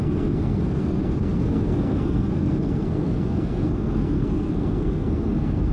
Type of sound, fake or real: fake